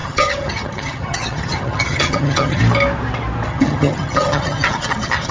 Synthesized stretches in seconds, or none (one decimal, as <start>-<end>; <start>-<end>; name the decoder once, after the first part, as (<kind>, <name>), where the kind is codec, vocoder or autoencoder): 0.0-2.6 (vocoder, HiFi-GAN); 3.5-5.3

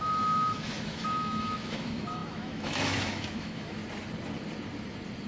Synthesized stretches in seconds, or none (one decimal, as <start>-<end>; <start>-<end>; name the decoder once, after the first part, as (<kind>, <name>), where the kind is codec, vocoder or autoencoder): 0.0-3.8 (autoencoder, DAC-VAE)